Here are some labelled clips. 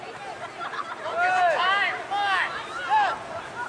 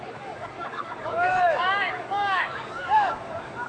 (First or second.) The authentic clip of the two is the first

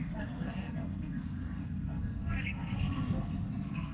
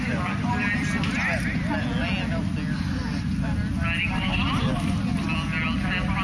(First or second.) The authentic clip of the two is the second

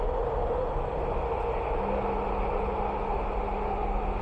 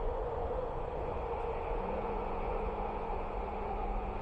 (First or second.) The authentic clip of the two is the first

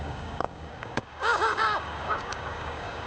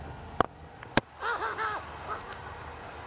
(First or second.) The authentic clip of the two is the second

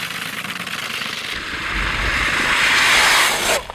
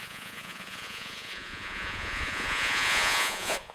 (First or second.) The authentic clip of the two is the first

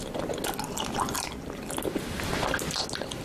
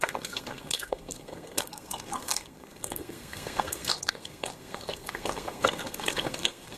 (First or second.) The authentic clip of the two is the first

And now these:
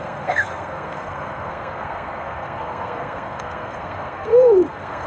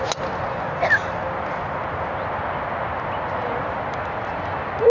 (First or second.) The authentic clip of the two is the second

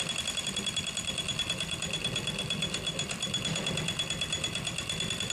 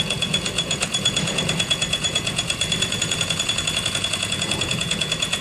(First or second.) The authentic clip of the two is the first